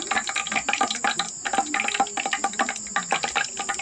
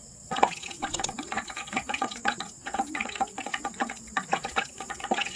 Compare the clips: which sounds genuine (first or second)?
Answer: first